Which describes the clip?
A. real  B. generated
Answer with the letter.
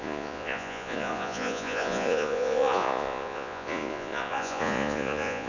B